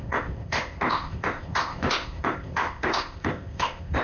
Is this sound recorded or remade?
remade